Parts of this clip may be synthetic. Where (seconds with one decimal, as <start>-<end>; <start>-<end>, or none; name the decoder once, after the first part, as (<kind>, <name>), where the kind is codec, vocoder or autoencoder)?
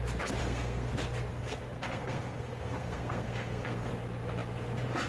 0.4-0.9 (codec, SNAC); 1.3-3.9